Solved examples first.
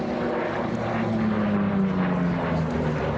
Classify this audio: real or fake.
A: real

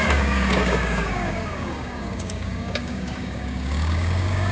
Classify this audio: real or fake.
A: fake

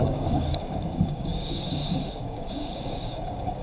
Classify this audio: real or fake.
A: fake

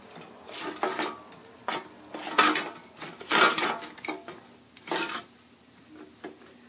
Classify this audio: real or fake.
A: real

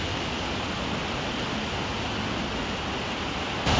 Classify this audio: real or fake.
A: real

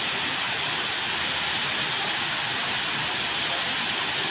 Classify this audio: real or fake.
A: real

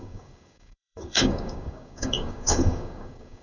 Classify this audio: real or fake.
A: fake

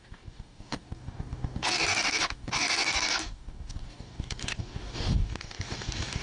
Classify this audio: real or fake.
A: fake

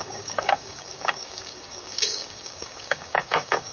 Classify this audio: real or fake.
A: fake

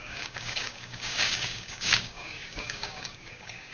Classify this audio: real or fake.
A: fake